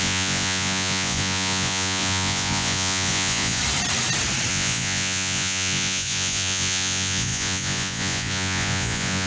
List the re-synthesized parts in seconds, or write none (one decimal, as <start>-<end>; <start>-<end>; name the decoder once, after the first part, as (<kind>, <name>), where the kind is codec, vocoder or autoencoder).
0.0-3.6 (vocoder, Vocos); 4.5-9.3